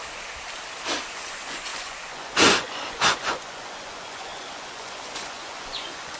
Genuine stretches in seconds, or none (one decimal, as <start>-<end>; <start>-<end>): 0.0-1.1